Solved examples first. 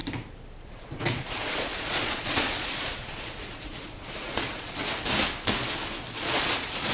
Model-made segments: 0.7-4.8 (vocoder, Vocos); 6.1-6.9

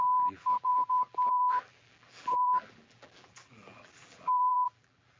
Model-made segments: 0.0-5.2 (vocoder, BigVGAN v2)